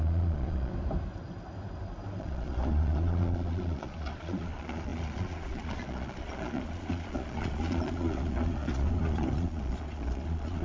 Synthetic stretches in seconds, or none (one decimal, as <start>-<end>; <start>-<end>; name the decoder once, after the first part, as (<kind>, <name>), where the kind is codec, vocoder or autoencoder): 0.0-0.7 (vocoder, Vocos); 2.2-10.6

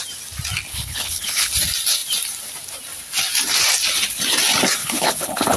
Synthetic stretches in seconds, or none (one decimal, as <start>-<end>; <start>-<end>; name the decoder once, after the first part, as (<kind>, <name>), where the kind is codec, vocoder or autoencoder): 0.7-1.5 (codec, HILCodec); 4.8-5.6

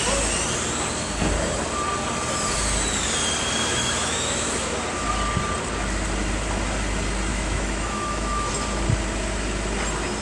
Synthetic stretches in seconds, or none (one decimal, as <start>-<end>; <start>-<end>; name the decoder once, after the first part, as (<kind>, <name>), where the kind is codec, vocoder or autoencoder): 3.7-4.5 (autoencoder, DAC-VAE); 7.3-8.5

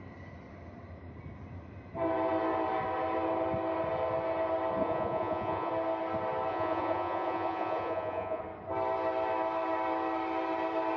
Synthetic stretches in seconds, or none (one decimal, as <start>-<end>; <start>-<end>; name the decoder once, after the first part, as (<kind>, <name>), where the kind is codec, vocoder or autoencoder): 4.8-5.7 (vocoder, Vocos); 6.5-8.4

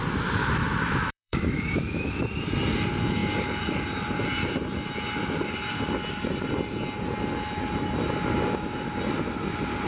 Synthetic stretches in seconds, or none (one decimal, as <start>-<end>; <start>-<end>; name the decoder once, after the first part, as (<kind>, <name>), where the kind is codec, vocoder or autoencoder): 0.4-2.2 (autoencoder, DAC-VAE)